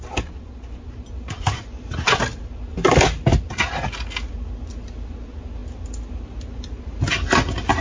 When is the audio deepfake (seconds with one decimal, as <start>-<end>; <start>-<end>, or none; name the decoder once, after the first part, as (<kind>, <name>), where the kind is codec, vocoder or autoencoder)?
none